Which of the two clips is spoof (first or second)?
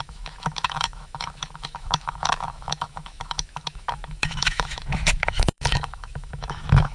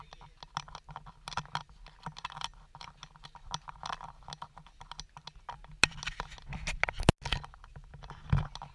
first